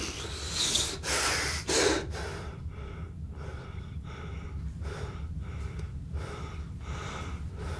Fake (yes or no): no